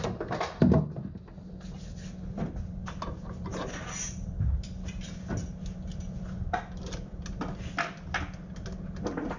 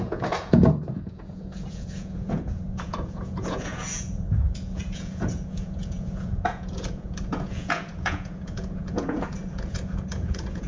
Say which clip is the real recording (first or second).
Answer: first